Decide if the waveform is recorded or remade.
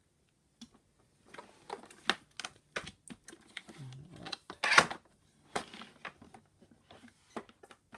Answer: recorded